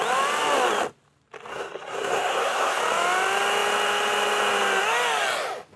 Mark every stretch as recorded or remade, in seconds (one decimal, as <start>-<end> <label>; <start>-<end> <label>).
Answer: 0.0-1.5 recorded; 1.5-2.8 remade; 2.8-5.8 recorded